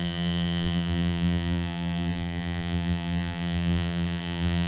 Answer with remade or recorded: remade